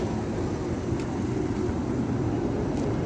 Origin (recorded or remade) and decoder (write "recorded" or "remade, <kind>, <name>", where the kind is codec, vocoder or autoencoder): recorded